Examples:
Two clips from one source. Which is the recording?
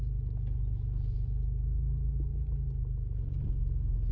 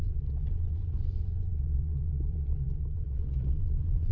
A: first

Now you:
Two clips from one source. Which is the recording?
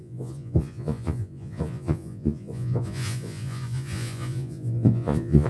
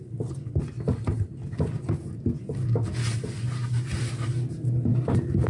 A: second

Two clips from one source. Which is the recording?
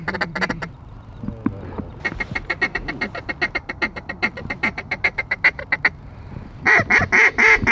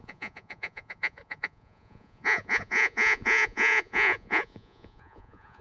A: first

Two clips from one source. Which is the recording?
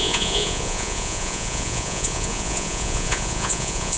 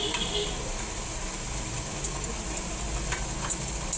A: second